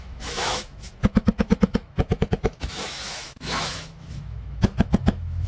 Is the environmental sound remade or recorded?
remade